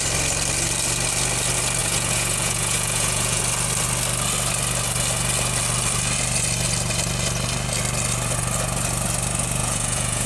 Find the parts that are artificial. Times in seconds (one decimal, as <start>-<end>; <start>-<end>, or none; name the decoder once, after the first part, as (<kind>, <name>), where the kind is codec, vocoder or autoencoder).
1.8-3.4 (vocoder, Vocos); 9.6-10.3